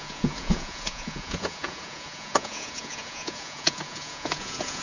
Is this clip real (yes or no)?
no